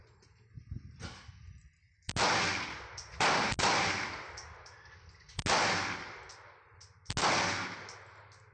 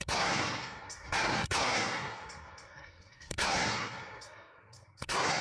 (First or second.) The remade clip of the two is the second